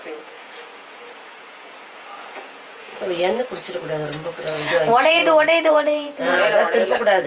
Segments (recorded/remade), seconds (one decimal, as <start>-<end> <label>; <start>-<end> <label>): 0.0-3.8 remade; 3.8-4.3 recorded; 4.3-5.2 remade; 5.2-5.7 recorded; 5.7-7.3 remade